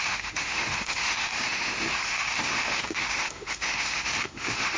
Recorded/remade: remade